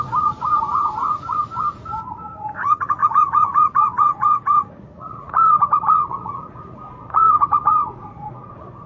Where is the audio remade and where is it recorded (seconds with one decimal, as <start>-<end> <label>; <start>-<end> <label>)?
0.0-8.9 remade